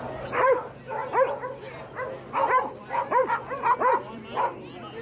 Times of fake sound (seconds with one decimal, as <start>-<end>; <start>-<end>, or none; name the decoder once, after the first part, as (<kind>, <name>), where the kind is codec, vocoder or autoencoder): 2.8-3.3 (vocoder, BigVGAN v2)